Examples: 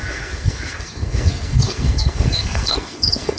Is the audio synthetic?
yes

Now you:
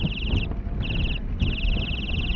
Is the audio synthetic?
no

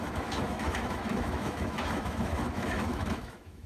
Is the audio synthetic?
yes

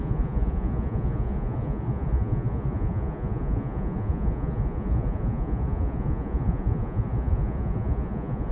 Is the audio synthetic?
yes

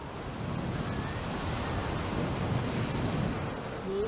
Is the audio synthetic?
no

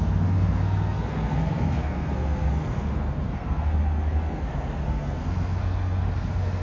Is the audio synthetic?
yes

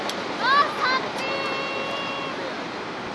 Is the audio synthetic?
no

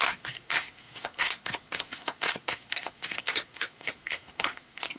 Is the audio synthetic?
yes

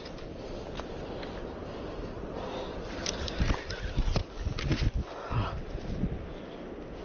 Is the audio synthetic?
no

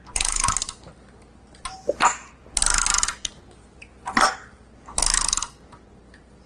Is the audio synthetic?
no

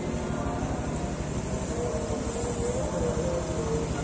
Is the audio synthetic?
no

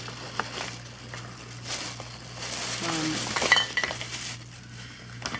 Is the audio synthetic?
no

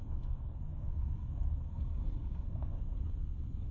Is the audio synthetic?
yes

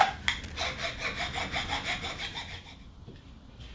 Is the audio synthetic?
no